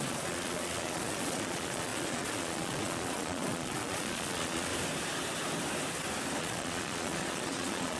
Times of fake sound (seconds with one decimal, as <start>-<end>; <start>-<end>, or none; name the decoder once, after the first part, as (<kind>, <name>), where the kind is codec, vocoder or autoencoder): 0.0-4.7 (vocoder, Vocos); 6.4-8.0